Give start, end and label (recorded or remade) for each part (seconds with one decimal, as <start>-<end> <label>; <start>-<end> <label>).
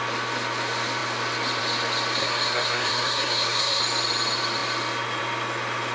0.0-2.2 recorded; 2.2-3.8 remade; 3.8-5.9 recorded